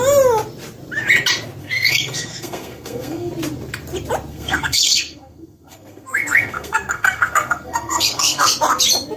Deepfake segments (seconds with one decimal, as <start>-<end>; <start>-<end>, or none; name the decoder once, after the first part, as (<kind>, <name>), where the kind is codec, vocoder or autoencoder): 1.6-3.3 (codec, SNAC); 4.3-8.5